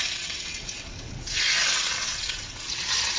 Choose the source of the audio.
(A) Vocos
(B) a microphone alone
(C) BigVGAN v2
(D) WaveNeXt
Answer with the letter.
D